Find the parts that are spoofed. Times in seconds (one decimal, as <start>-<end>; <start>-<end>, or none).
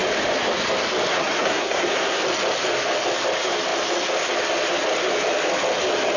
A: 1.1-2.2